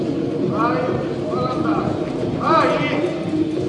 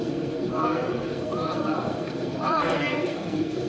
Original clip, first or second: first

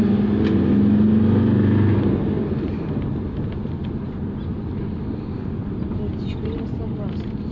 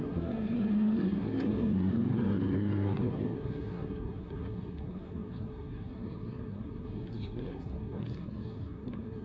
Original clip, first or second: first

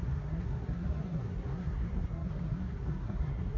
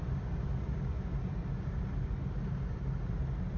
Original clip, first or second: second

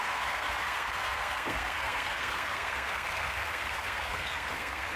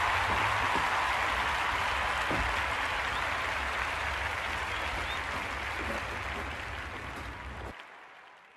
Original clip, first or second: second